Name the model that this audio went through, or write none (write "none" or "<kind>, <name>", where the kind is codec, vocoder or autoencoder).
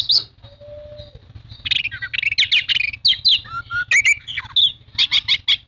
none